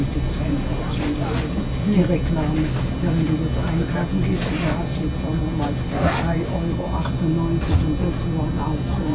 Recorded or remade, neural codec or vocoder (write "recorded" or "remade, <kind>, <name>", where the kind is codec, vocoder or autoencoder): recorded